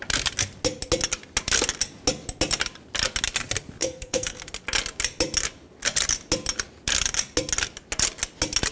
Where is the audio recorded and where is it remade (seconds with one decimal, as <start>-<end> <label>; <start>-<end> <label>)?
0.0-3.8 recorded; 3.8-4.4 remade; 4.4-8.7 recorded

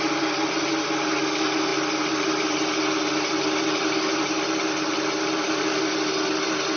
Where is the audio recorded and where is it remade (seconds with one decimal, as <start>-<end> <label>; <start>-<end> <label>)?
0.0-6.8 recorded

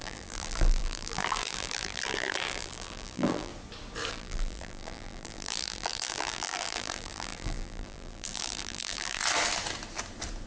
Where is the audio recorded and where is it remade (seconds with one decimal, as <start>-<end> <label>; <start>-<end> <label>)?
0.0-3.5 remade; 3.5-4.1 recorded; 4.1-9.2 remade; 9.2-10.5 recorded

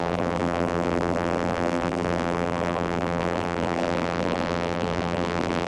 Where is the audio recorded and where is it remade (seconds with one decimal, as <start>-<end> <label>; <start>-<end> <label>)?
0.0-5.7 remade

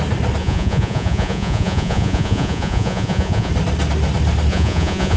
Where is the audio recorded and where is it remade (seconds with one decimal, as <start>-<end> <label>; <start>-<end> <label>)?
0.0-0.4 recorded; 0.4-3.5 remade; 3.5-4.5 recorded; 4.5-5.2 remade